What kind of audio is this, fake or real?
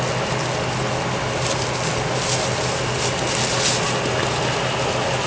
real